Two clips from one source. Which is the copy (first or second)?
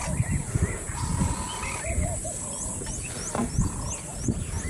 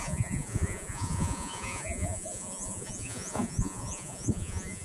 second